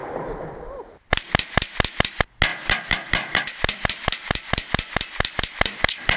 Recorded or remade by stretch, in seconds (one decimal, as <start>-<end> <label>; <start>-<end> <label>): 0.0-0.9 remade; 0.9-2.5 recorded; 2.5-5.4 remade; 5.4-6.2 recorded